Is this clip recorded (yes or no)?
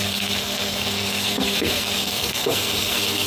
no